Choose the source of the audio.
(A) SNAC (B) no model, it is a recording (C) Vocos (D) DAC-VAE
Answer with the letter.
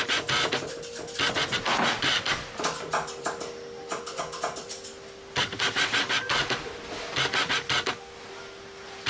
B